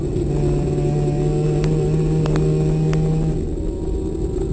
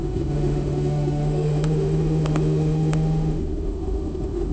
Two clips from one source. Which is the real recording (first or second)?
first